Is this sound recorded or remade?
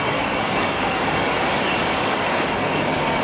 remade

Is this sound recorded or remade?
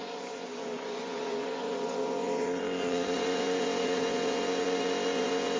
remade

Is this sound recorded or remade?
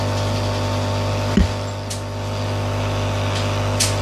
recorded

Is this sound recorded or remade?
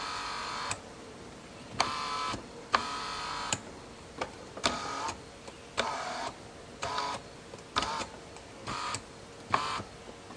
recorded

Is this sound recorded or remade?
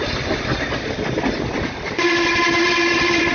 recorded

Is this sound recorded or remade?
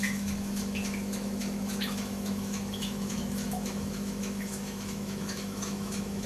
remade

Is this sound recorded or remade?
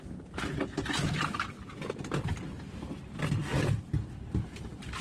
recorded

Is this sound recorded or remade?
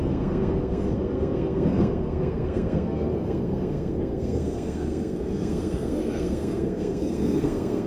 remade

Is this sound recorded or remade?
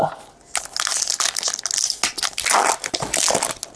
recorded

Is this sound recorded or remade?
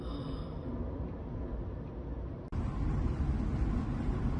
recorded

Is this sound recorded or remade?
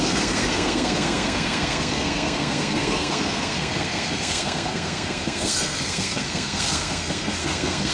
remade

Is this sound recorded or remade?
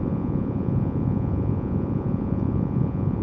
remade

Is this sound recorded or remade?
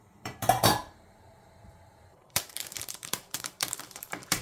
remade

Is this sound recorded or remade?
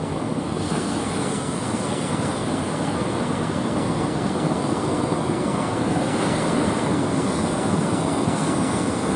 remade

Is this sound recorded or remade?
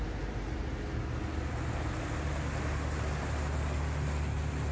recorded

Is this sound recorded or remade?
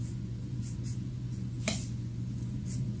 remade